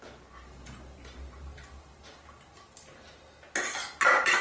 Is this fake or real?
real